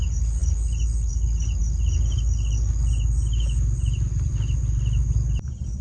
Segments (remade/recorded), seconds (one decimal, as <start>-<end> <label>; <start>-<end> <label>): 0.0-5.8 recorded